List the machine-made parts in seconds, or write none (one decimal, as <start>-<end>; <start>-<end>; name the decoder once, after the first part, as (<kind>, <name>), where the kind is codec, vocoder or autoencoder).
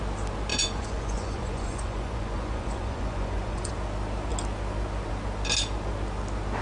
0.5-3.7 (vocoder, Vocos)